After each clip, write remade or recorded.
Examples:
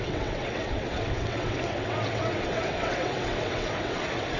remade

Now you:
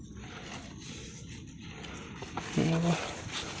recorded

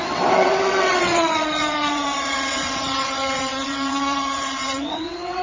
remade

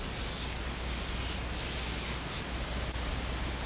recorded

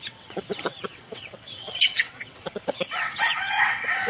remade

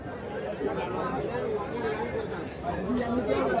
recorded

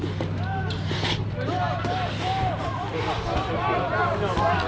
recorded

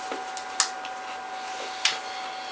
recorded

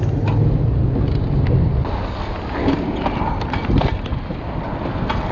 recorded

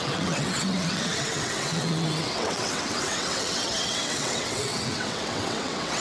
remade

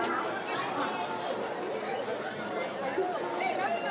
recorded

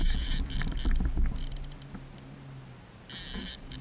recorded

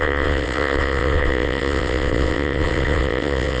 remade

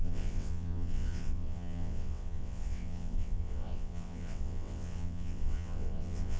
remade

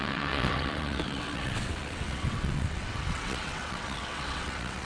remade